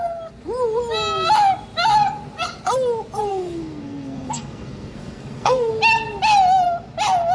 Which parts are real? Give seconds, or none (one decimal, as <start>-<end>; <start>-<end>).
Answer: 0.0-3.3; 5.7-7.3